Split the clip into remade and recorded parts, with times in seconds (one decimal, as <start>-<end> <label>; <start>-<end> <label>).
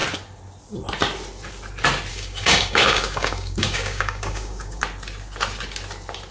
0.0-2.1 recorded; 2.1-4.8 remade; 4.8-6.3 recorded